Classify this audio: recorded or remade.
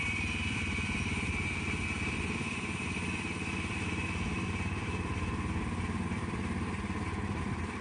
remade